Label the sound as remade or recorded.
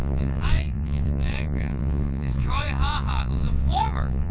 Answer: remade